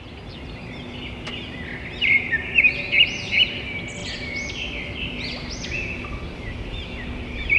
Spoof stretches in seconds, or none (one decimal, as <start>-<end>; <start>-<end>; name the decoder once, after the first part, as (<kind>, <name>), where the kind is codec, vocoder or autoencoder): none